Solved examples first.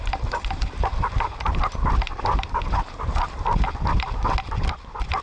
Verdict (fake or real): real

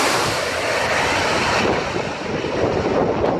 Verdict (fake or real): real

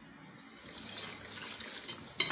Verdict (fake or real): real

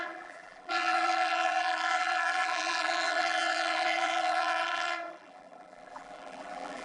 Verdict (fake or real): fake